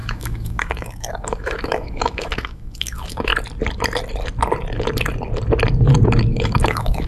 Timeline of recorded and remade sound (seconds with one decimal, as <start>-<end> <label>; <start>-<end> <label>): 0.0-3.3 remade; 3.3-6.3 recorded; 6.3-7.1 remade